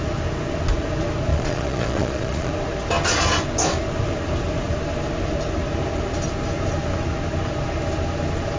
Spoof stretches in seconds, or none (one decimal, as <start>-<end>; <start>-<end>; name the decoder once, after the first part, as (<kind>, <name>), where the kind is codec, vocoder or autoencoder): 1.3-2.5 (vocoder, Vocos)